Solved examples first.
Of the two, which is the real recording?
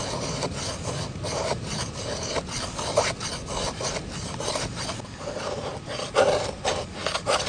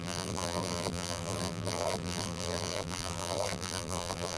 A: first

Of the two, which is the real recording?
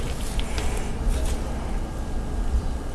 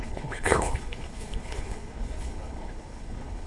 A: first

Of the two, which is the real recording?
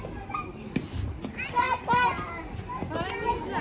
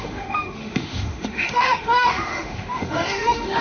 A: first